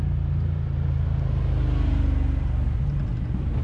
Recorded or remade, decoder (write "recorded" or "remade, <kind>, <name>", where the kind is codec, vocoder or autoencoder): recorded